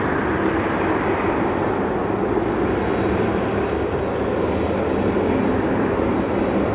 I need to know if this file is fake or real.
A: real